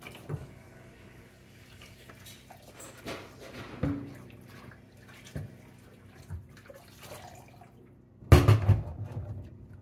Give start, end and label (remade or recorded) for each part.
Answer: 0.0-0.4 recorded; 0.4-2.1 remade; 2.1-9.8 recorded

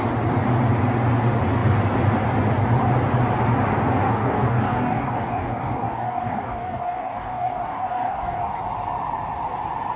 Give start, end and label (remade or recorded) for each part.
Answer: 0.0-4.1 recorded; 4.1-8.6 remade; 8.6-10.0 recorded

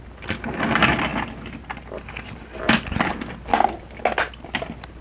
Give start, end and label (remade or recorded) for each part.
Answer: 0.0-5.0 recorded

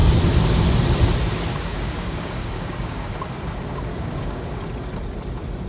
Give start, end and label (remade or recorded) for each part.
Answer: 0.0-1.5 recorded; 1.5-3.1 remade; 3.1-3.9 recorded; 3.9-4.5 remade; 4.5-5.7 recorded

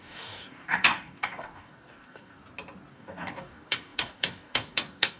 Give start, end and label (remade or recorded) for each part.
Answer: 0.0-2.4 remade; 2.4-2.9 recorded; 2.9-5.2 remade

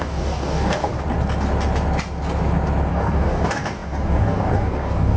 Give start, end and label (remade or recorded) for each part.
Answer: 0.0-0.9 remade; 0.9-2.9 recorded; 2.9-5.2 remade

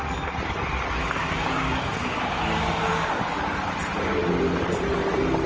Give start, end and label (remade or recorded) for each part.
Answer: 0.0-1.0 recorded; 1.0-3.4 remade; 3.4-5.5 recorded

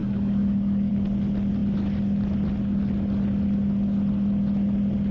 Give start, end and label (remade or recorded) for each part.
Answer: 0.0-0.9 remade; 0.9-5.1 recorded